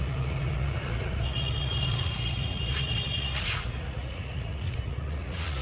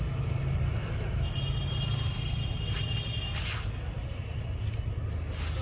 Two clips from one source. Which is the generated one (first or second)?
first